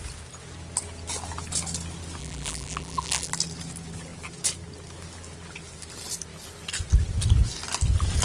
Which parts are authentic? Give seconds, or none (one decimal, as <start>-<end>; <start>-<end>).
0.0-2.2; 3.3-8.2